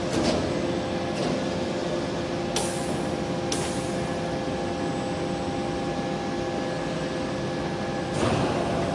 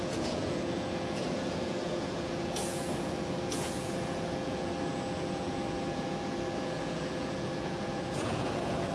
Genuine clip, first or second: first